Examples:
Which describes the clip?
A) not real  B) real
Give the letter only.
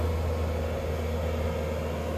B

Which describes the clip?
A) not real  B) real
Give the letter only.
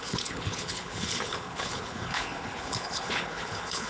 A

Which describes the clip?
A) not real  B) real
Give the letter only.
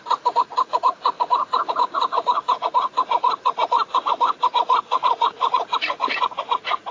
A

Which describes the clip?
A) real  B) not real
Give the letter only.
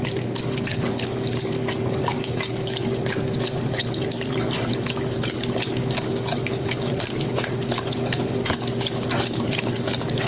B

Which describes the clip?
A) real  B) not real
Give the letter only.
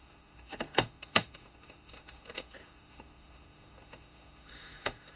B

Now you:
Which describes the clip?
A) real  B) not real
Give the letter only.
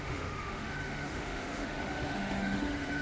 B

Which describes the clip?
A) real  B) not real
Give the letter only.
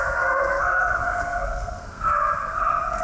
B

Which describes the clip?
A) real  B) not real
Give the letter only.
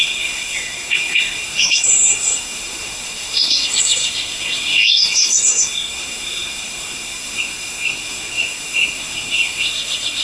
B